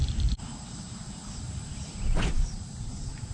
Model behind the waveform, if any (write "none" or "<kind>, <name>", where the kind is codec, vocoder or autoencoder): vocoder, BigVGAN v2